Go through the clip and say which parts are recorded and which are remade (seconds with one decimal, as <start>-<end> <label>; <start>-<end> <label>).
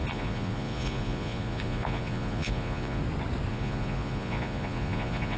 0.0-3.0 remade; 3.0-3.5 recorded; 3.5-5.4 remade